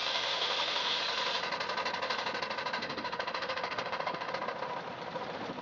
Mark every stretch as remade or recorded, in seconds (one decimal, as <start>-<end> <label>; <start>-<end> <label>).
0.0-1.0 remade; 1.0-2.8 recorded; 2.8-4.3 remade; 4.3-5.6 recorded